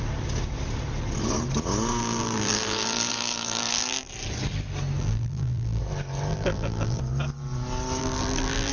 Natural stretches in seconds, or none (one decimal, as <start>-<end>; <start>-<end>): 0.0-2.0; 4.1-5.0; 5.8-6.3; 7.0-8.0